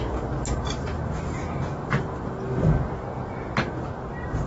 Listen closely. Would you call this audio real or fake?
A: real